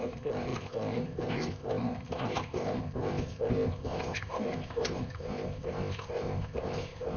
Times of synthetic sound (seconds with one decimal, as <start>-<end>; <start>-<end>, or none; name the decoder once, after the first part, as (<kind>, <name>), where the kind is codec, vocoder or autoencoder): 0.0-7.2 (codec, ZipCodec)